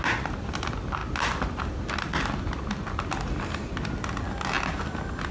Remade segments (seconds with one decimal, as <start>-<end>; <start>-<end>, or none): none